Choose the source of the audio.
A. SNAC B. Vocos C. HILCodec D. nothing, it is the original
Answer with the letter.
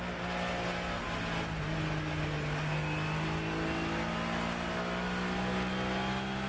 D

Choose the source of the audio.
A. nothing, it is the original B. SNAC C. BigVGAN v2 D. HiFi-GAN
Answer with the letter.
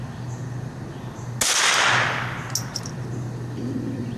A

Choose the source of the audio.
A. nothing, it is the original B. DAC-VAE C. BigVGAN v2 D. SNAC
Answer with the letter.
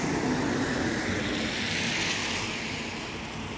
A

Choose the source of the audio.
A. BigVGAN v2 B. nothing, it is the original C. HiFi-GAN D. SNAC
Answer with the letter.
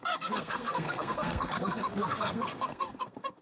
D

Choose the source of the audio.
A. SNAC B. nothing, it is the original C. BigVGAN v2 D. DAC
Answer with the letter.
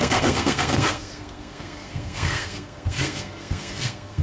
A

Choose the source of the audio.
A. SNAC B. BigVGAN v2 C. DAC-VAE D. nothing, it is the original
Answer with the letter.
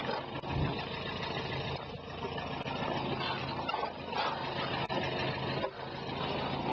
D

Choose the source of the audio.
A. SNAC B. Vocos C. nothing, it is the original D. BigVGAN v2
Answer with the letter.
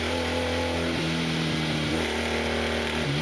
C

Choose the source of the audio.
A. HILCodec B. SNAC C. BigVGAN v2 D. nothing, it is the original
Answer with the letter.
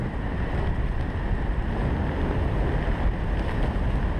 D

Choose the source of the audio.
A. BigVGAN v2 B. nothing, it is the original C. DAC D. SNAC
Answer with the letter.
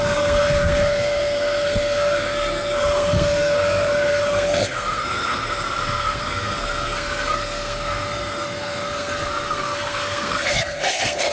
D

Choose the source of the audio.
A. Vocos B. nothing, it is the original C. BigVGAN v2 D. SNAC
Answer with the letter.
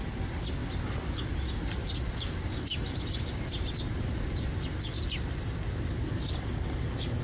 B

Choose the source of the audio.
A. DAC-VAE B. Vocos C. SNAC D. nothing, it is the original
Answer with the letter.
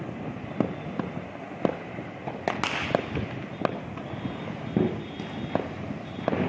D